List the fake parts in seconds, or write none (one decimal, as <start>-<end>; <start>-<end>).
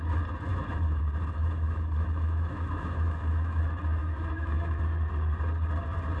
0.5-1.0; 1.4-3.6; 4.0-4.8